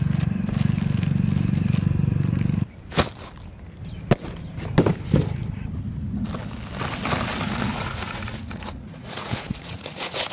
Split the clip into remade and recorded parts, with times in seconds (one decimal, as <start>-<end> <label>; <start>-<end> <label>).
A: 0.0-7.7 recorded; 7.7-10.3 remade